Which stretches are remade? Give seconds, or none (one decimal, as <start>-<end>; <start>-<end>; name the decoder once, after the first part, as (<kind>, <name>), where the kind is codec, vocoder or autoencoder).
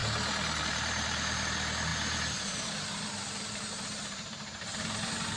0.6-5.4 (vocoder, BigVGAN v2)